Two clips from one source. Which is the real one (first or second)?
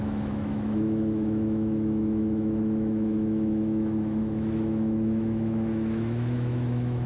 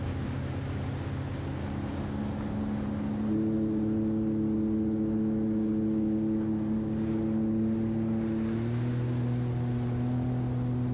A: second